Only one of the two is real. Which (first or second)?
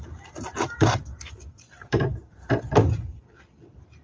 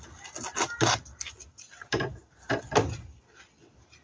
second